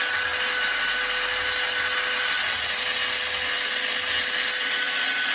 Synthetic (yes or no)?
no